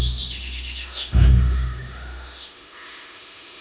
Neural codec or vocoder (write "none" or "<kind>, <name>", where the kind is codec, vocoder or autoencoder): autoencoder, DAC-VAE